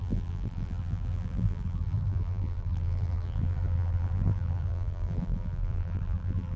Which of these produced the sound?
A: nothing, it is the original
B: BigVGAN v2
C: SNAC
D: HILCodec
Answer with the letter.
B